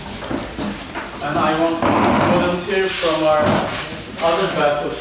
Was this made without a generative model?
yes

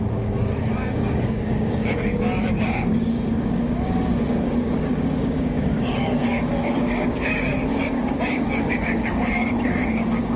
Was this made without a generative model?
no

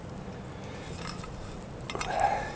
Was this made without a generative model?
yes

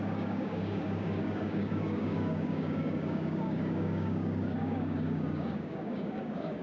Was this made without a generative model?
no